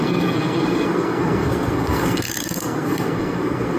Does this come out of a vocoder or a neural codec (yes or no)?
yes